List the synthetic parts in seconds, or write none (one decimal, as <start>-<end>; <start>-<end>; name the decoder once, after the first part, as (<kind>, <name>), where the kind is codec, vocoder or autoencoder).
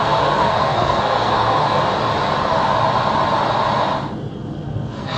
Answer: 0.0-1.6 (codec, SNAC); 4.3-5.2